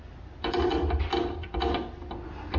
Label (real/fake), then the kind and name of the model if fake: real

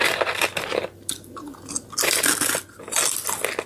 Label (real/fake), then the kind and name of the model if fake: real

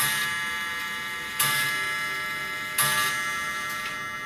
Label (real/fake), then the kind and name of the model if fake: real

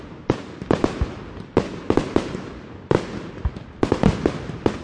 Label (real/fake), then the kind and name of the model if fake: real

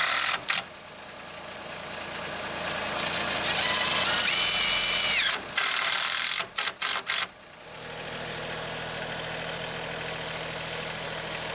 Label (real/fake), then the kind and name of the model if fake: real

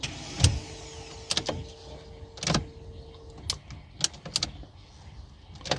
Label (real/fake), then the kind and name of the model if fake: real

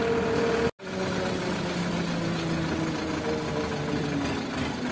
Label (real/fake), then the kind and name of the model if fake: real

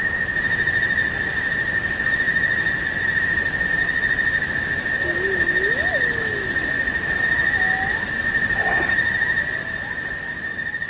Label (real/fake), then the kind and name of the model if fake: real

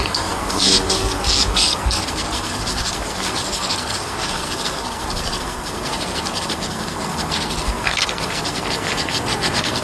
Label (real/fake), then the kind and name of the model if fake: fake, codec, SNAC